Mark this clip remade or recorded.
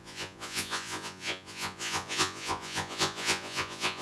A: remade